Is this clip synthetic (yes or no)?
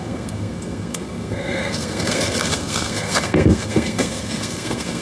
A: yes